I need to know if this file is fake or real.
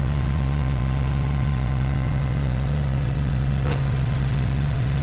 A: fake